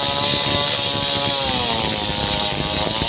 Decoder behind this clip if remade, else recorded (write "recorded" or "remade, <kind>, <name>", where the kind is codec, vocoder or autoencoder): recorded